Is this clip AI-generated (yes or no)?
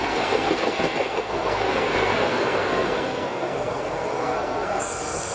yes